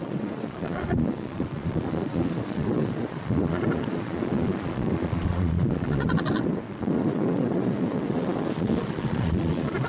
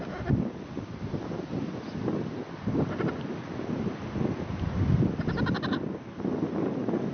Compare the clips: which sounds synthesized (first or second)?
first